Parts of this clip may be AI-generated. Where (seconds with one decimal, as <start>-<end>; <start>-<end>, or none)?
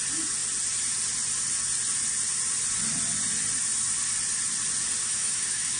5.0-5.8